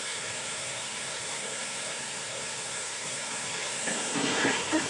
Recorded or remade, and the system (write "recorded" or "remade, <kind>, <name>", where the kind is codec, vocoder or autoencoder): remade, codec, SNAC